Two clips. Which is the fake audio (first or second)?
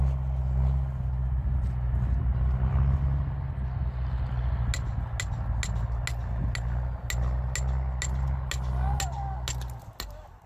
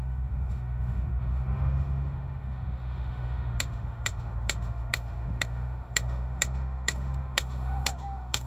second